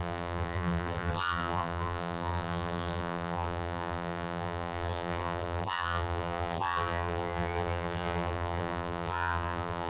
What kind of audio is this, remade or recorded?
remade